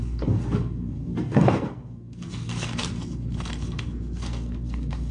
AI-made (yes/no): yes